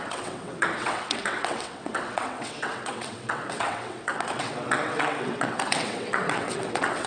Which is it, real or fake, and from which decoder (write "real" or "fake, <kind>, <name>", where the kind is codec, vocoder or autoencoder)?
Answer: fake, vocoder, WaveNeXt